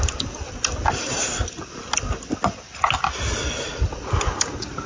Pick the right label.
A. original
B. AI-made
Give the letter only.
A